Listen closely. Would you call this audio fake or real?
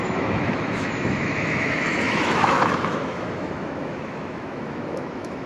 fake